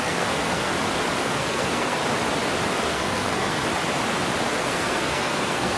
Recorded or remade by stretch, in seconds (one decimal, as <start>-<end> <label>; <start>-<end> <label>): 0.0-0.7 remade; 0.7-1.2 recorded; 1.2-2.0 remade; 2.0-2.8 recorded; 2.8-3.6 remade; 3.6-4.5 recorded; 4.5-5.8 remade